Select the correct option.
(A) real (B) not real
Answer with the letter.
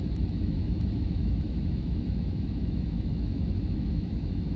B